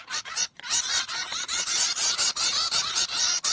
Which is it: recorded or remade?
remade